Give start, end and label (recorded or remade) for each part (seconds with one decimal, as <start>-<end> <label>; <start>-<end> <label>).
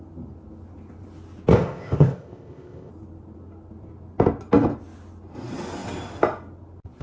0.0-1.5 recorded; 1.5-2.9 remade; 2.9-7.0 recorded